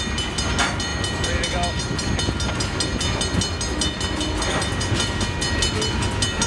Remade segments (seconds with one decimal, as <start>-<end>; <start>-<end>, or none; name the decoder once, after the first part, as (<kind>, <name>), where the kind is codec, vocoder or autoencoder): none